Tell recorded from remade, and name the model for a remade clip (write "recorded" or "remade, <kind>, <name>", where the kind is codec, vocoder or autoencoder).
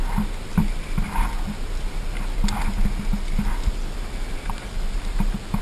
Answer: recorded